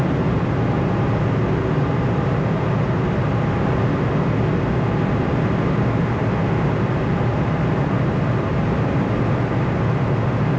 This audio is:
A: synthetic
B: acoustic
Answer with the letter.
B